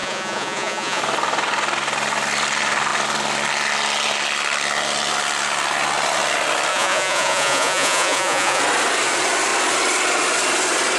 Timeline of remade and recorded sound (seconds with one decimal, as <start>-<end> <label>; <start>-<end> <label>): 0.0-1.0 remade; 1.0-6.7 recorded; 6.7-8.6 remade; 8.6-11.0 recorded